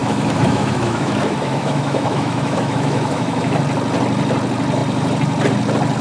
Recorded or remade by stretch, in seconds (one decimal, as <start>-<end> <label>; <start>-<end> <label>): 0.0-3.6 remade; 3.6-6.0 recorded